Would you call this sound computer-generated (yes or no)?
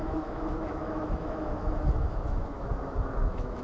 yes